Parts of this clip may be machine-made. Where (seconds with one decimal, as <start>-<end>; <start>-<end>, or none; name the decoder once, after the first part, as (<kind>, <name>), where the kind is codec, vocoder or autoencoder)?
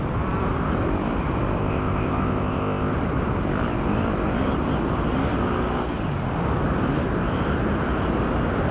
1.6-2.9 (codec, ZipCodec)